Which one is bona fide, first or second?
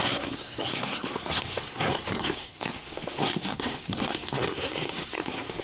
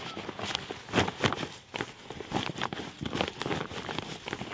second